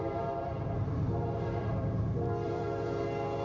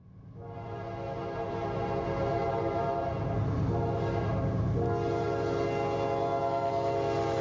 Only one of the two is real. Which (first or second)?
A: second